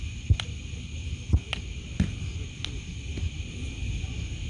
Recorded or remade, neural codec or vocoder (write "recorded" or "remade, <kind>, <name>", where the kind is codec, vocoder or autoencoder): recorded